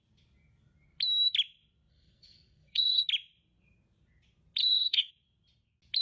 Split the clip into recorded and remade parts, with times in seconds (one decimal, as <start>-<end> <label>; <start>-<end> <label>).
0.0-1.9 recorded; 1.9-3.0 remade; 3.0-4.6 recorded; 4.6-5.1 remade; 5.1-6.0 recorded